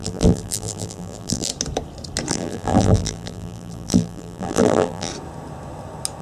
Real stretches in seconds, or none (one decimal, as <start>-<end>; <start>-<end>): 1.5-2.3; 5.1-6.2